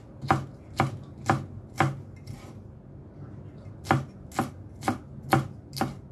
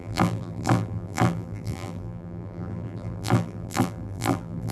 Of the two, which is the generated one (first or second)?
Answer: second